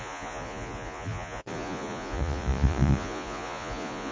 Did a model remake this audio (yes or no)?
yes